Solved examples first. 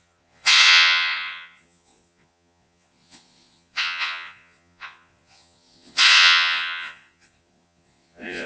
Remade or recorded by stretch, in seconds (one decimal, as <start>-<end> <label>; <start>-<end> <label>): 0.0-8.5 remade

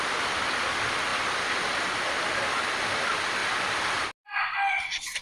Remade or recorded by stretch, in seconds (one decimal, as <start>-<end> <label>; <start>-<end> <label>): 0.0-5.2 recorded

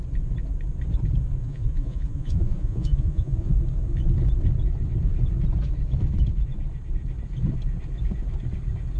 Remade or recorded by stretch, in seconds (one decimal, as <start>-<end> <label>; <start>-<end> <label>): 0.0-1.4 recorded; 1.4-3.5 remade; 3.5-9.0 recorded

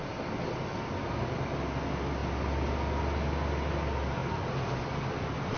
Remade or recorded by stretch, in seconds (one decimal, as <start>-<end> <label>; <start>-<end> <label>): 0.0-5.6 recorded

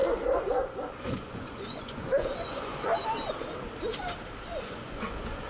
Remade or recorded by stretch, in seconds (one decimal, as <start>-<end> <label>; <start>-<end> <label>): 0.0-1.0 recorded; 1.0-2.9 remade; 2.9-4.6 recorded; 4.6-5.5 remade

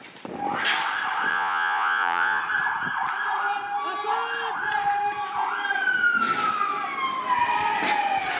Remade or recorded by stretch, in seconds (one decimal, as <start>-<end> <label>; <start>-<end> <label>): 0.0-1.3 recorded; 1.3-2.4 remade; 2.4-8.4 recorded